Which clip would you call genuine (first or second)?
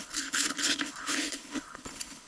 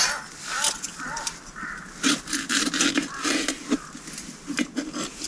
second